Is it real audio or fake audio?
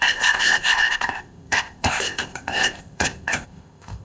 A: fake